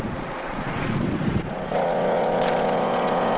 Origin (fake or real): fake